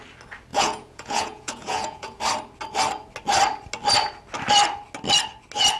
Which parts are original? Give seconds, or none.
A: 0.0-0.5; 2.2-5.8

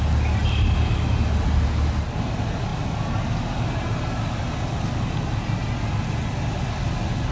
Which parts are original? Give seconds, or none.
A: 0.0-7.3